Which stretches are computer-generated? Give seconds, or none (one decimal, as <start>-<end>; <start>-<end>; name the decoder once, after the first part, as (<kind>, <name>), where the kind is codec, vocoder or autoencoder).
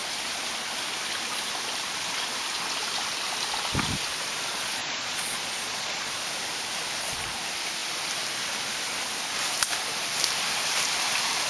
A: 4.8-6.1 (vocoder, Vocos)